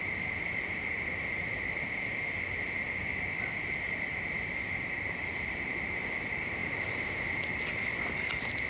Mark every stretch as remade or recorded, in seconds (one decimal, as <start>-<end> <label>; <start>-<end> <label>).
0.0-6.6 recorded; 6.6-7.4 remade; 7.4-8.7 recorded